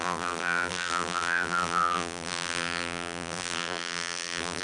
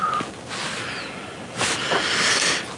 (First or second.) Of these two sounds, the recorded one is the second